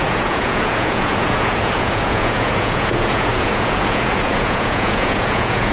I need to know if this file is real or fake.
fake